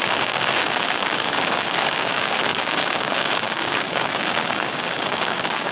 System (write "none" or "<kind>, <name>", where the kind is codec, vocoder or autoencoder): codec, DAC